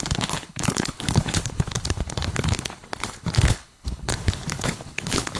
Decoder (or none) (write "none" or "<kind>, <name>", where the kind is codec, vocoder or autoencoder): codec, HILCodec